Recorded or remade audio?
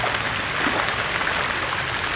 recorded